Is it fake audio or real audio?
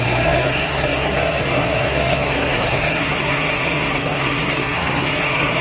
fake